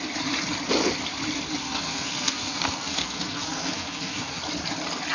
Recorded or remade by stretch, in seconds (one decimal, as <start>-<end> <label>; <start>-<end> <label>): 0.0-1.6 recorded; 1.6-4.4 remade; 4.4-5.1 recorded